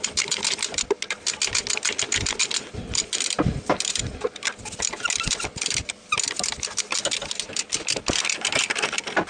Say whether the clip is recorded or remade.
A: recorded